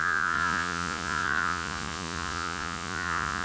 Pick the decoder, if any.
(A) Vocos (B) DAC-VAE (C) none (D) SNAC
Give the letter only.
A